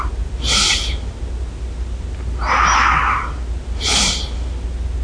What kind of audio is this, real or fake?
real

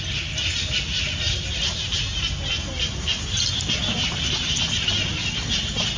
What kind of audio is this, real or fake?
real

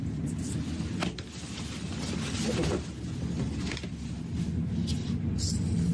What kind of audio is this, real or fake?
real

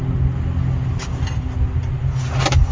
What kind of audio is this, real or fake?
real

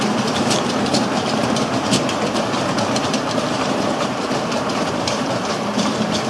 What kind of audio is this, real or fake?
fake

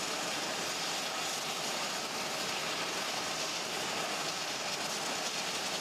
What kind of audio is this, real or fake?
real